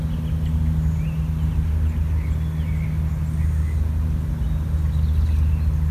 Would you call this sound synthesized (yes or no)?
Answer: no